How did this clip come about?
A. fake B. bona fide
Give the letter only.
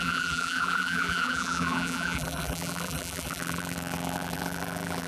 A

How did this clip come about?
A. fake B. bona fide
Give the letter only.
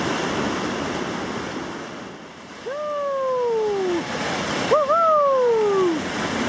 B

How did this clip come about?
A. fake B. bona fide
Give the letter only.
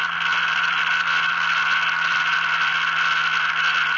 B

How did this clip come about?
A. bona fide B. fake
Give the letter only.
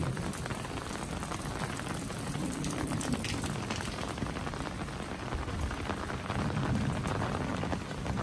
B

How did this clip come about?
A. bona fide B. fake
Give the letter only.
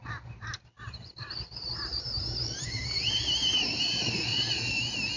B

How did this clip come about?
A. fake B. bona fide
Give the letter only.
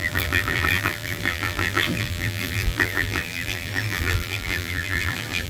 A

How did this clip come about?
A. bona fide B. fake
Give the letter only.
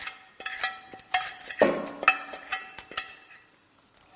A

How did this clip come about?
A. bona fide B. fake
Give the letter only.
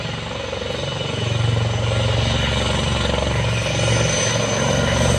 A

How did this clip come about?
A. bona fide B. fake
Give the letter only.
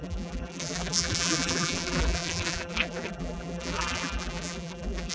B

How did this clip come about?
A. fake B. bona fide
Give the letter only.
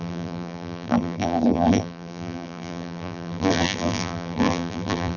A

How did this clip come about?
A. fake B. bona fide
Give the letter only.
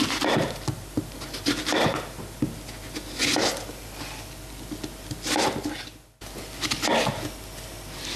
B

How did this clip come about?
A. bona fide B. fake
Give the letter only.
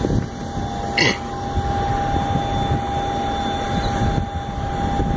A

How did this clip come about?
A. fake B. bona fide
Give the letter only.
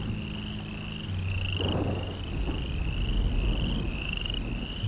B